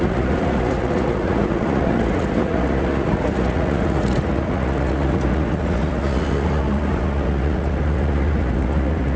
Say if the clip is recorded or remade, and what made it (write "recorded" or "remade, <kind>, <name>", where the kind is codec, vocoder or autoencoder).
remade, vocoder, Vocos